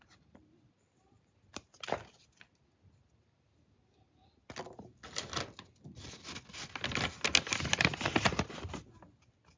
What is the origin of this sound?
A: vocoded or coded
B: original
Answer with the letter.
B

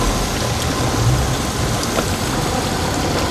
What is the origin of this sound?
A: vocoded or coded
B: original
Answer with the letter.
B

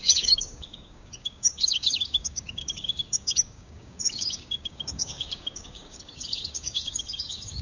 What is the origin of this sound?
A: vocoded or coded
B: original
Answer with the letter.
A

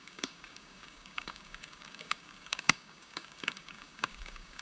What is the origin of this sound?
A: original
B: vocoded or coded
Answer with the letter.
B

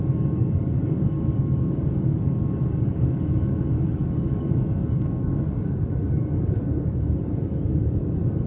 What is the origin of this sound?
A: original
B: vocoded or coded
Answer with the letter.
B